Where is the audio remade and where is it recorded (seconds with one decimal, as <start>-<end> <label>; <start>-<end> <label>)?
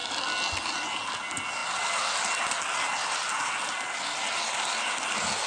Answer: 0.0-5.5 recorded